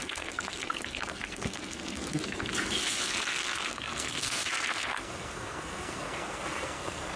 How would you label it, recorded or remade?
remade